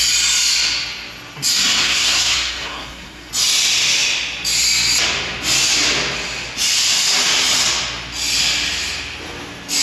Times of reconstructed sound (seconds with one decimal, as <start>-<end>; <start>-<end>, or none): 1.8-3.3